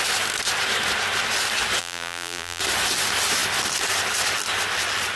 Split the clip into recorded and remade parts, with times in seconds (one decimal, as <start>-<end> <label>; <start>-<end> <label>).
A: 0.0-1.8 recorded; 1.8-2.6 remade; 2.6-5.2 recorded